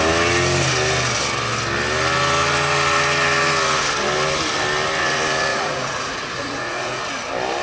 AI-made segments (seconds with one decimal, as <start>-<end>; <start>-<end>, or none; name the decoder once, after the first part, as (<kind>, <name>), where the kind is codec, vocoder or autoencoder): 5.5-7.0 (vocoder, Vocos)